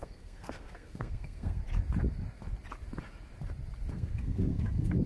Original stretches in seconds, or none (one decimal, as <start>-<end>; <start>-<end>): 1.6-3.9